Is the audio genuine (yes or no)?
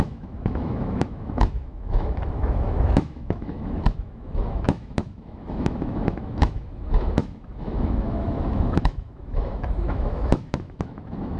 no